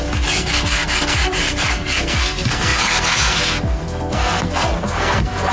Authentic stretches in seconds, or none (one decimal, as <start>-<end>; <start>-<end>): none